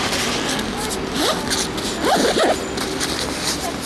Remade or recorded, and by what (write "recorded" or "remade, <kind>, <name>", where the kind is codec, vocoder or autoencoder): recorded